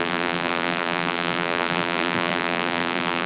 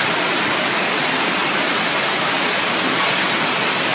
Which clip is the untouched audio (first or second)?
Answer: second